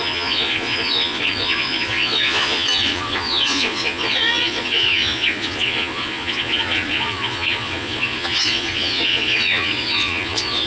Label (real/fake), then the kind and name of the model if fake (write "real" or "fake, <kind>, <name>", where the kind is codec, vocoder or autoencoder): fake, vocoder, Vocos